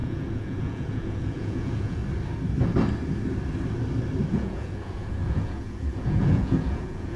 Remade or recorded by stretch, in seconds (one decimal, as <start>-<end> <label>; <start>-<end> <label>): 0.0-2.0 remade; 2.0-4.3 recorded; 4.3-7.2 remade